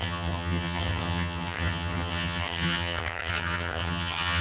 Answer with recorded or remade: remade